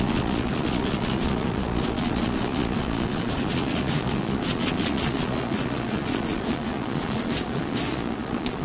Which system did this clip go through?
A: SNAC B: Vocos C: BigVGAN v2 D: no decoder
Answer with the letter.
B